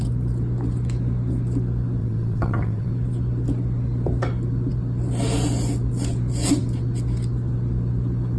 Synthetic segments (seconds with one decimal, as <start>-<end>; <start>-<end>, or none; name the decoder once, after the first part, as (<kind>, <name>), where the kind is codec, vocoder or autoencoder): 2.0-2.9 (vocoder, WaveNeXt)